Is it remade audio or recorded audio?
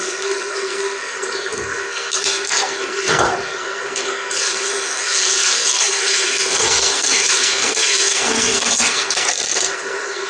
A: remade